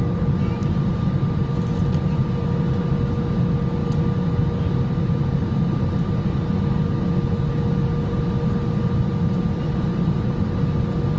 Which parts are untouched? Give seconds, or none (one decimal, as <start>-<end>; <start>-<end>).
0.0-0.6; 1.6-11.2